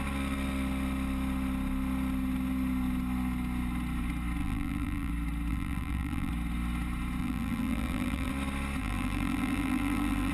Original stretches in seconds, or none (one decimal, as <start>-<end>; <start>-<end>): 0.0-4.4; 5.1-5.5; 6.3-7.2; 8.3-8.8